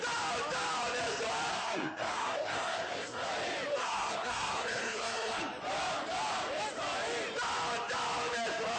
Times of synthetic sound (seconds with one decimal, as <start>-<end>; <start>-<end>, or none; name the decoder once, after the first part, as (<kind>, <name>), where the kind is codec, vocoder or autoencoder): 1.5-3.3 (codec, SNAC); 3.7-5.4